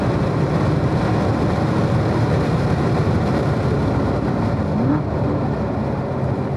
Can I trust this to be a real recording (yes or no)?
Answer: yes